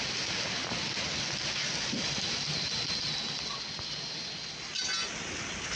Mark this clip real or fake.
real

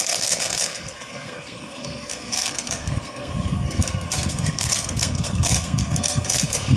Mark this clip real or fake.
fake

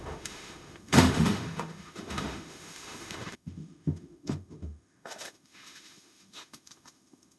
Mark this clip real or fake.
fake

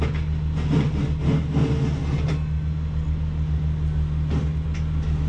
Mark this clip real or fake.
real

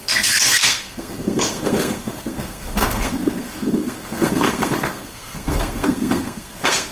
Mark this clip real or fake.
fake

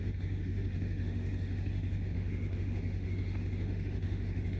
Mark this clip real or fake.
fake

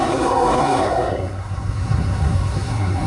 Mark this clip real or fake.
fake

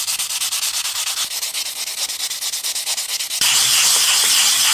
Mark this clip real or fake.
real